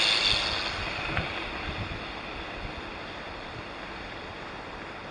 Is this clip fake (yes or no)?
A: no